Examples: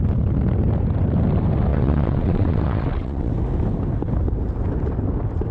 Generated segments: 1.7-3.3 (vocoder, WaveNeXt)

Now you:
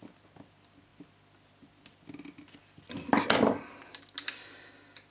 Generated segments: none

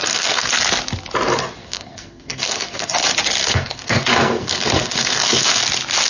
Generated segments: 0.0-0.5 (codec, SNAC); 1.6-2.9; 3.4-5.6

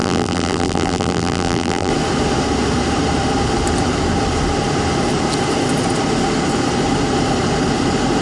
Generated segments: 0.0-1.9 (vocoder, BigVGAN v2)

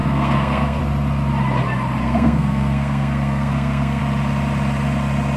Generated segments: 0.0-0.8 (codec, SNAC); 2.0-4.0

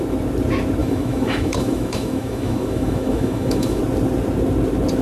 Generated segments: 0.8-3.8 (autoencoder, DAC-VAE)

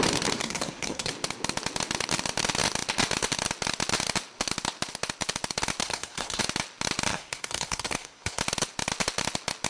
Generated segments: 0.4-1.1 (codec, SNAC); 5.8-6.4; 7.1-8.4

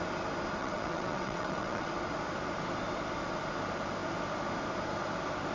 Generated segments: 0.6-1.9 (vocoder, WaveNeXt)